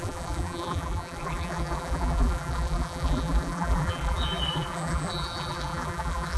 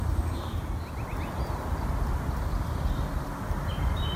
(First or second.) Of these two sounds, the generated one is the first